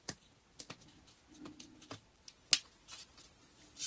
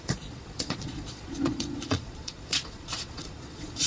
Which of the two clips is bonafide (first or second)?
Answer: first